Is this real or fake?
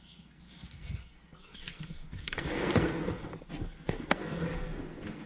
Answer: fake